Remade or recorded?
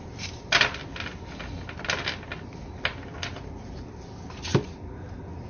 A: recorded